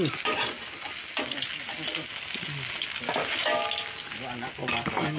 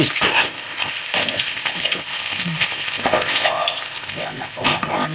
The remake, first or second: second